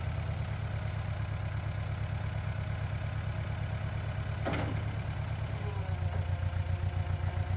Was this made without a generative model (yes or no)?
yes